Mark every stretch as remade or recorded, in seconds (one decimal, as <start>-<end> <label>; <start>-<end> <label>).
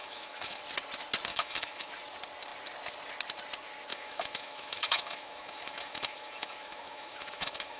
0.0-0.6 remade; 0.6-1.3 recorded; 1.3-1.9 remade; 1.9-3.9 recorded; 3.9-7.8 remade